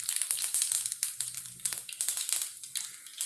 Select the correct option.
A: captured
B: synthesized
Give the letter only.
A